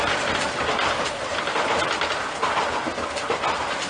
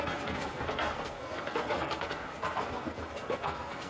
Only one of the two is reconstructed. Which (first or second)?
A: second